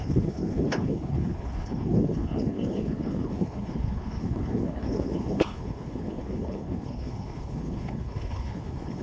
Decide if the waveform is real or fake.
fake